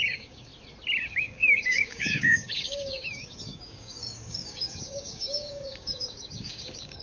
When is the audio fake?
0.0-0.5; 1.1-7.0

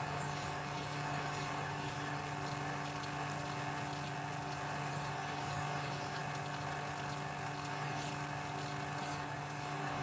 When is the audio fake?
0.0-2.2; 4.9-6.2; 7.7-8.1; 9.0-10.0

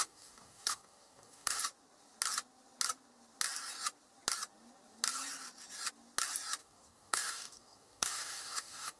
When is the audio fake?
0.0-1.6; 6.6-9.0

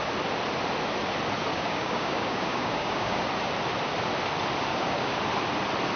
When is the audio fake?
1.5-3.3; 4.7-5.2

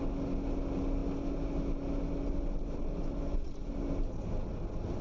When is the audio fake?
none

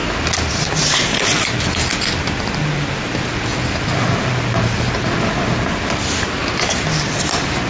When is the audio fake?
none

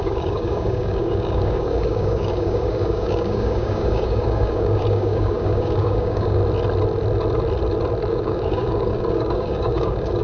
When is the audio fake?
0.0-6.4; 8.1-10.2

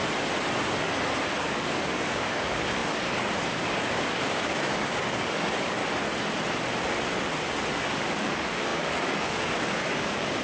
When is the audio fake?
1.5-5.8; 7.7-10.4